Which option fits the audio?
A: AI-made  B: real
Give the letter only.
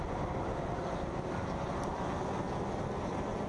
B